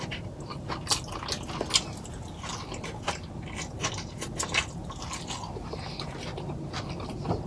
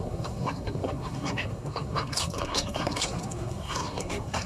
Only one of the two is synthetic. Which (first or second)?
second